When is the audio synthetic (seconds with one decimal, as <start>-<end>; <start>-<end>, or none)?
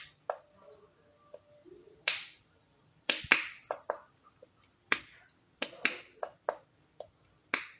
1.1-5.2